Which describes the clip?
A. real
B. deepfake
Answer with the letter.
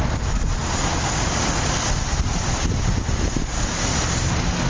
A